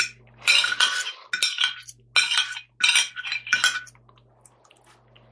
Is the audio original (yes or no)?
yes